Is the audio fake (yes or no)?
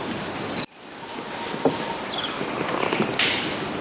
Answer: no